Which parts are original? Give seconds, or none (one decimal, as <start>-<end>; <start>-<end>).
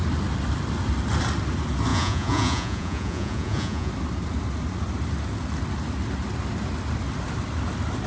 0.0-1.9; 3.9-8.1